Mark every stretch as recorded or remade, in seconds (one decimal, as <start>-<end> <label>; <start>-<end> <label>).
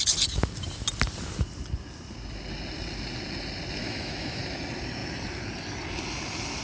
0.0-3.8 recorded; 3.8-4.4 remade; 4.4-6.6 recorded